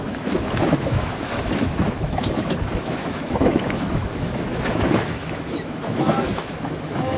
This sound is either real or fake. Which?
fake